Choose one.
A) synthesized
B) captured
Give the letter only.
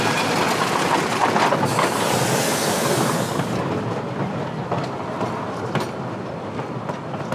B